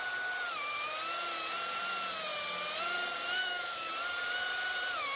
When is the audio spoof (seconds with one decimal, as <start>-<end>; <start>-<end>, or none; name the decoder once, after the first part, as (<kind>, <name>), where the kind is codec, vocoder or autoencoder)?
3.4-3.9 (autoencoder, DAC-VAE)